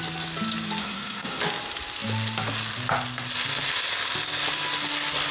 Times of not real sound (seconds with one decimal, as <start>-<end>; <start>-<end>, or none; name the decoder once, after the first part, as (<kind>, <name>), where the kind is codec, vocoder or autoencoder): 0.8-1.4 (codec, SNAC)